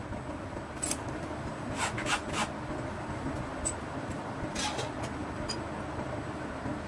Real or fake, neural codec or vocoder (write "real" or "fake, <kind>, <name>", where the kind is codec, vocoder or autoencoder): real